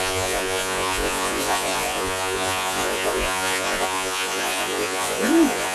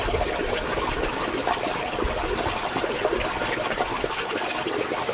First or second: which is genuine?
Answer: second